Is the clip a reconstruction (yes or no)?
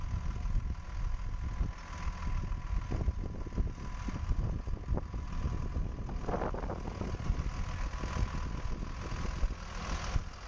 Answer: no